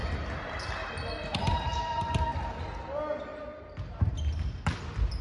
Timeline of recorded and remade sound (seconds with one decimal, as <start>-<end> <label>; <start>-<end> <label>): 0.0-5.2 recorded